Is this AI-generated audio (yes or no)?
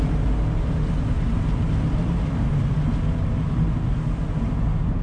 no